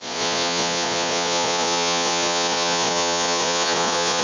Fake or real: fake